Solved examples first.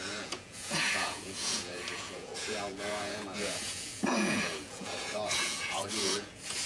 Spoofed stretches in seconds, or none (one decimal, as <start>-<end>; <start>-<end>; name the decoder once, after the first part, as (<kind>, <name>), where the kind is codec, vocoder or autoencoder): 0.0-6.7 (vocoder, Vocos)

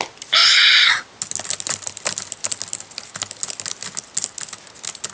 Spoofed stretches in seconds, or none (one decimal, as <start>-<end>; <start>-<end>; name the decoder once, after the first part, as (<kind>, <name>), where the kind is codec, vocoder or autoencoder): none

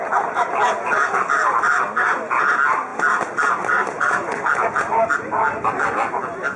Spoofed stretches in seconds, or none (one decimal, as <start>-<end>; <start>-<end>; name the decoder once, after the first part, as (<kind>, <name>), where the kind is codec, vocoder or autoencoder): none